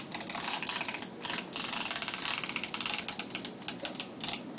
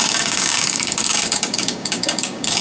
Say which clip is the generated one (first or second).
second